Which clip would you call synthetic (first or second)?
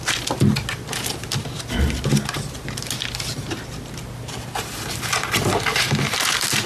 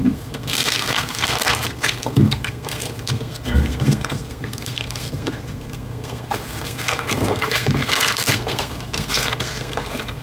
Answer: second